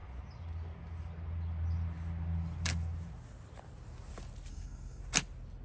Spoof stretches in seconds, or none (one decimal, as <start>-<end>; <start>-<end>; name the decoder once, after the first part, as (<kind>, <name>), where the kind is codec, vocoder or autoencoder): 4.5-5.0 (codec, SNAC)